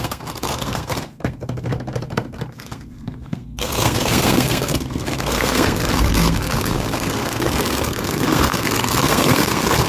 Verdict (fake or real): fake